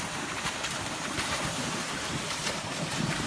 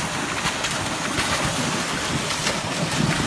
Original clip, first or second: second